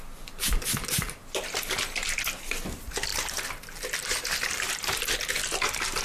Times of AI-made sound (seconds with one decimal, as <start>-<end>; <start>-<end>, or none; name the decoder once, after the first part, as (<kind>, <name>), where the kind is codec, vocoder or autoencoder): 3.1-5.4 (vocoder, BigVGAN v2)